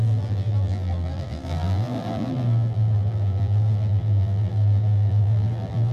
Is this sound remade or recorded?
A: remade